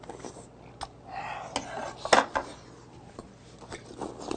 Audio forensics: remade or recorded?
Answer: recorded